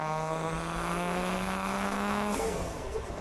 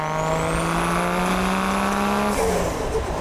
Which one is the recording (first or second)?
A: second